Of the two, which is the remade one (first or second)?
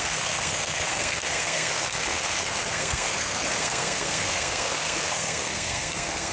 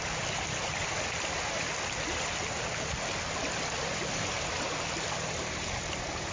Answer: first